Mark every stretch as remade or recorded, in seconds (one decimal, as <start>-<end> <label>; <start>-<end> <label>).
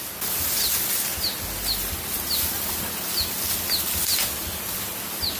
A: 0.0-5.4 recorded